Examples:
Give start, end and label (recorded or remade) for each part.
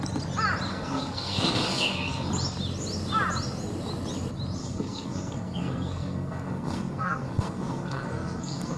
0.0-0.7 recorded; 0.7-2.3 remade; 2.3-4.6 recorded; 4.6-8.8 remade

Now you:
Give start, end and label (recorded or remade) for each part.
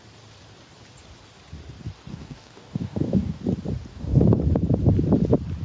0.0-2.1 recorded; 2.1-3.4 remade; 3.4-3.9 recorded; 3.9-4.4 remade; 4.4-5.6 recorded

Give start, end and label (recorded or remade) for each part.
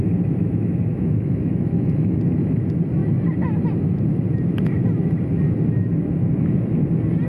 0.0-0.9 recorded; 0.9-2.2 remade; 2.2-7.3 recorded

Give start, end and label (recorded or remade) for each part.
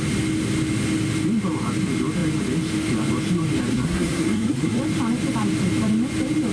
0.0-3.7 recorded; 3.7-4.8 remade; 4.8-6.5 recorded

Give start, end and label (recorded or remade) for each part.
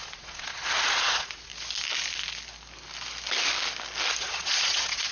0.0-1.5 remade; 1.5-4.2 recorded; 4.2-5.1 remade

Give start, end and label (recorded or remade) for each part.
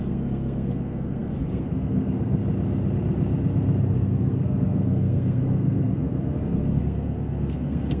0.0-2.4 remade; 2.4-3.8 recorded; 3.8-8.0 remade